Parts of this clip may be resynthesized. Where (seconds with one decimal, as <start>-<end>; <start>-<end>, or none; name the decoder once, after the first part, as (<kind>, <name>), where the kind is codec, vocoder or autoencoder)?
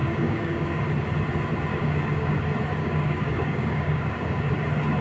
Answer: 0.0-0.8 (codec, DAC); 1.7-2.4; 2.8-4.5